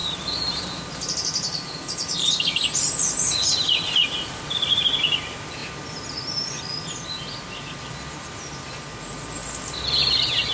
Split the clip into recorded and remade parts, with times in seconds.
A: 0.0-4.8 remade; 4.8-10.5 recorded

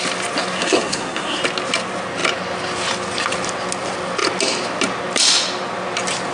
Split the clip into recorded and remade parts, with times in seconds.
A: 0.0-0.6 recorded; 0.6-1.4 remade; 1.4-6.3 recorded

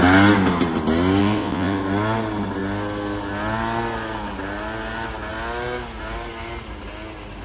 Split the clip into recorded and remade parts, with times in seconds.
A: 0.0-1.2 recorded; 1.2-1.8 remade; 1.8-7.4 recorded

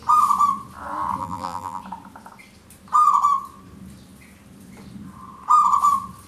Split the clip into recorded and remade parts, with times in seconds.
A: 0.0-1.2 recorded; 1.2-1.8 remade; 1.8-6.3 recorded